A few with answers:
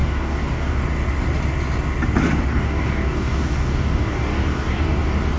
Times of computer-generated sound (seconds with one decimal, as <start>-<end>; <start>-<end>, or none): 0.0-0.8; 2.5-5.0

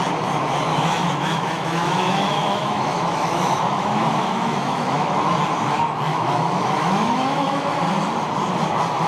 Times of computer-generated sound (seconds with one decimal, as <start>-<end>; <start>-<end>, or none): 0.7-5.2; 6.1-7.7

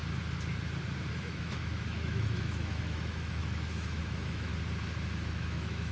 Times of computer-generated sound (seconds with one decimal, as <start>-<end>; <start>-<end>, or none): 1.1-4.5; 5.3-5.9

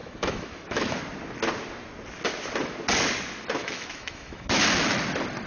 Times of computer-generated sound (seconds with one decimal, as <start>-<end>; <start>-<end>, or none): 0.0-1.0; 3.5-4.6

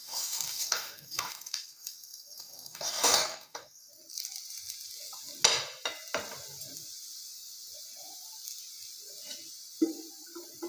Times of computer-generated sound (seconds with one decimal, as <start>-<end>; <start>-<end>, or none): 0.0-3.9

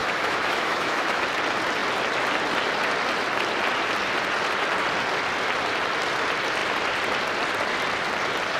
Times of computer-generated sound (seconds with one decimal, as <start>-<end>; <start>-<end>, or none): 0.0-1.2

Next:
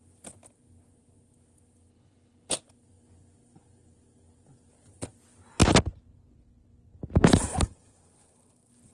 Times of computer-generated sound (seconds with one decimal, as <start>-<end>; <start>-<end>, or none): 1.9-2.6